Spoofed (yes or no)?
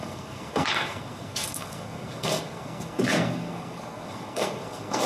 yes